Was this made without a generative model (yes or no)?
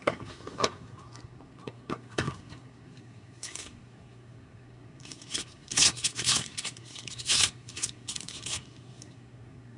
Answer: no